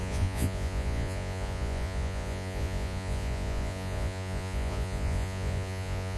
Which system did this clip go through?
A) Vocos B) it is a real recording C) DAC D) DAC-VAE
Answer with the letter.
A